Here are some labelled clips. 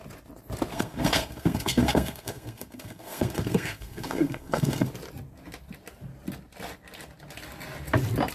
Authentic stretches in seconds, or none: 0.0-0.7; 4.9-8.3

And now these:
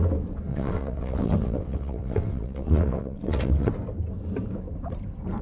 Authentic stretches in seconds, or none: 0.0-0.5; 3.7-5.4

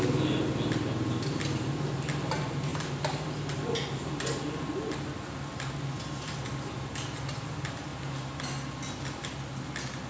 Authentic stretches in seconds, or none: 0.0-2.7; 3.3-7.9; 8.5-10.1

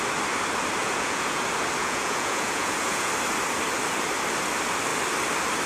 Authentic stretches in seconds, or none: 0.0-0.8; 1.4-1.8; 3.1-5.7

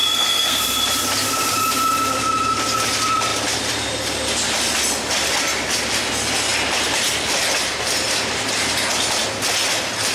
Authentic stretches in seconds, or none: 0.6-10.1

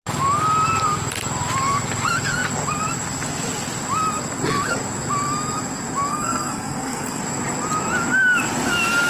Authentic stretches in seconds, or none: 0.0-6.1; 7.2-9.1

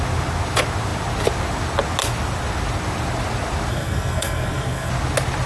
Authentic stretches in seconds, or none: 0.0-3.7; 4.9-5.5

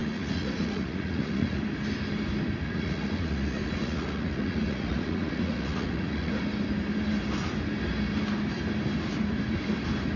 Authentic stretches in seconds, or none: 1.6-2.6; 6.3-10.2